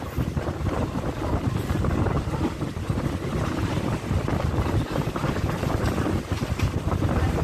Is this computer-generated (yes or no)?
no